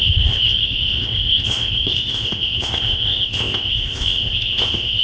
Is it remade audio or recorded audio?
remade